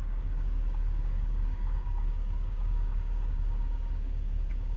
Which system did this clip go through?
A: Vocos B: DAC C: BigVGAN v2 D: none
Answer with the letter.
B